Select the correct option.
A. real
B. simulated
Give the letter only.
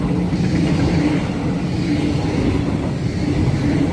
A